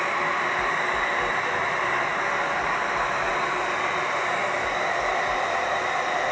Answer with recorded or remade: recorded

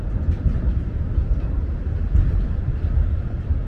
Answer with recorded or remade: remade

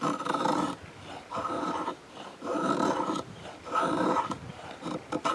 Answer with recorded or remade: remade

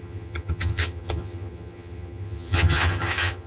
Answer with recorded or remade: remade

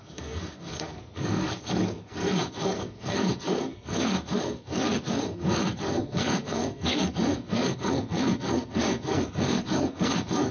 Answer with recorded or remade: remade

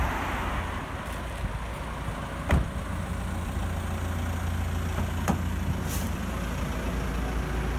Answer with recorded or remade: recorded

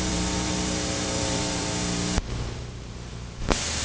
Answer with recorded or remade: remade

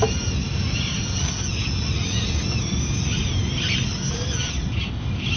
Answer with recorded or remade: recorded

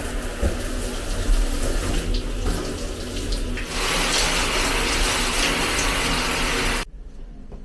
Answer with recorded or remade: recorded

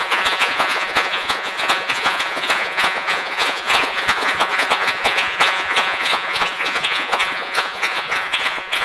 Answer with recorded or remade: remade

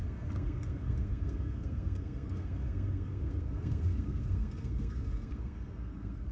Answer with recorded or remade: remade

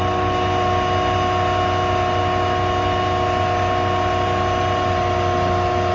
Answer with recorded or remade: recorded